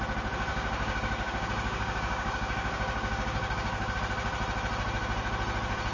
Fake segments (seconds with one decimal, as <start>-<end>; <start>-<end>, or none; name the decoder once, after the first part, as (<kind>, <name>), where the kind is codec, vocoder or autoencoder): 0.5-4.0 (codec, DAC)